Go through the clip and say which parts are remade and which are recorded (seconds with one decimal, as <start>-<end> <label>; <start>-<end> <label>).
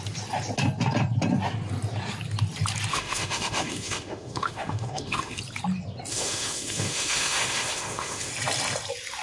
0.0-2.9 recorded; 2.9-5.4 remade; 5.4-6.1 recorded; 6.1-8.3 remade; 8.3-9.2 recorded